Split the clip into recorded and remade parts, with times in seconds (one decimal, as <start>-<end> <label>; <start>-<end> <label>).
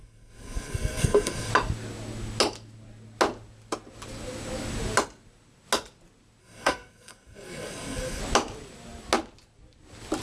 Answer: 0.0-1.5 remade; 1.5-6.4 recorded; 6.4-8.2 remade; 8.2-10.2 recorded